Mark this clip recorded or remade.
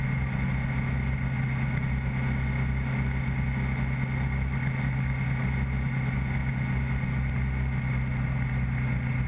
recorded